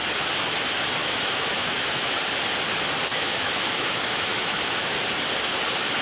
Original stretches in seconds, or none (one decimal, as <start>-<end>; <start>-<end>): 0.0-1.0; 2.1-3.1; 5.0-6.0